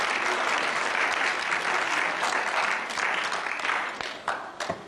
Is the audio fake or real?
real